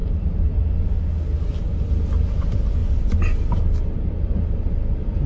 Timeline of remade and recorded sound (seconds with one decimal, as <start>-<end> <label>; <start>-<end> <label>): 0.0-0.6 remade; 0.6-5.3 recorded